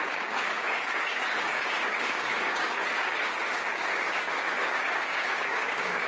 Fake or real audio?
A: fake